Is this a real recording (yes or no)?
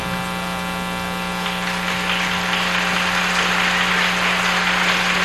yes